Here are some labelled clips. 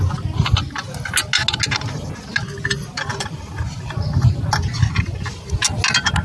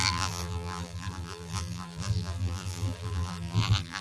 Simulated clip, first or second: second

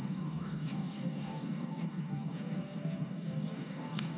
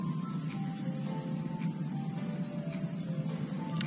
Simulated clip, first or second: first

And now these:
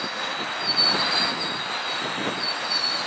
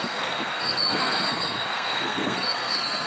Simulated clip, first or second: second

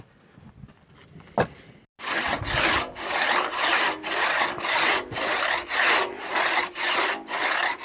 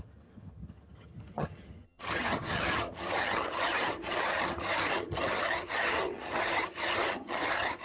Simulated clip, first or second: second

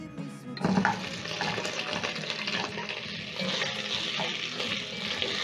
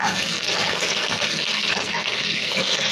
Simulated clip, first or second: second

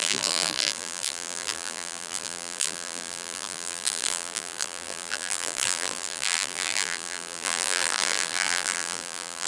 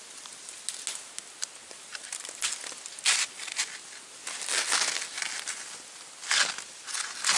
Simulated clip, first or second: first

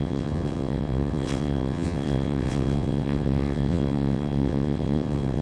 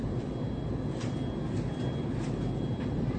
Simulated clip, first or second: first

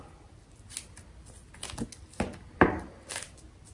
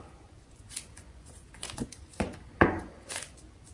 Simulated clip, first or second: second